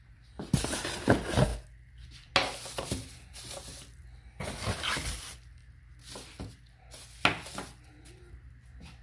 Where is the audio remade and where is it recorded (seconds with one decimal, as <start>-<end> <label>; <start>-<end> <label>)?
0.0-9.0 recorded